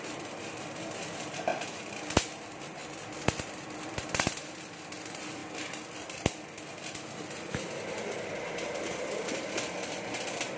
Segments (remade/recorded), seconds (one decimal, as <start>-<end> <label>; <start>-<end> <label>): 0.0-1.5 remade; 1.5-2.0 recorded; 2.0-5.4 remade; 5.4-6.7 recorded; 6.7-10.6 remade